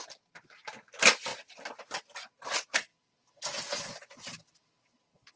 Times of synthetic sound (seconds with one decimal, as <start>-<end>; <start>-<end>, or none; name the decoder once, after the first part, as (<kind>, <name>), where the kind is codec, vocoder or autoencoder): none